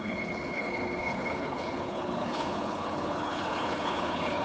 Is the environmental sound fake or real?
fake